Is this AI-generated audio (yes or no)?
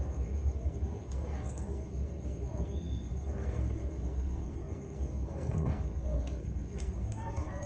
yes